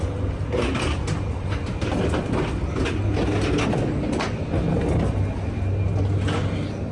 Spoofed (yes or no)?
no